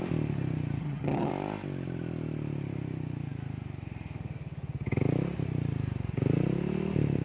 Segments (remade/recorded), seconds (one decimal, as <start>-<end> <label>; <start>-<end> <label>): 0.0-0.8 recorded; 0.8-1.3 remade; 1.3-7.2 recorded